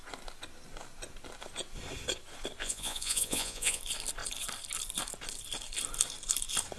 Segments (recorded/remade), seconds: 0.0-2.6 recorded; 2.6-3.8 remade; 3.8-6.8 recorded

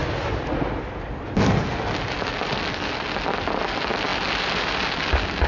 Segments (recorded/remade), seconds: 0.0-5.5 recorded

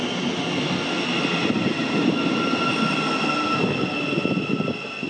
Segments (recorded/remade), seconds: 0.0-5.1 recorded